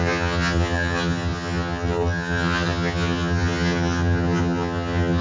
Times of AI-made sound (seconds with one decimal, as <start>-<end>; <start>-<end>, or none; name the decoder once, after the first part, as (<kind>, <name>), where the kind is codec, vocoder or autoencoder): 0.0-5.2 (vocoder, HiFi-GAN)